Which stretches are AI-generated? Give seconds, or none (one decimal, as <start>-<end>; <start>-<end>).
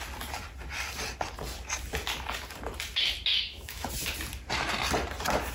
3.3-3.9